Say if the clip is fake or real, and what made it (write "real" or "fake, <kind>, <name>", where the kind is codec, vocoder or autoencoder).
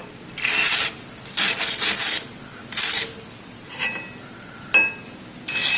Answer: real